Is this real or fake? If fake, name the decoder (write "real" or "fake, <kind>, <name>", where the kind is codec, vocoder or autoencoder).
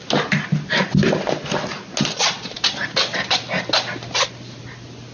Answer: real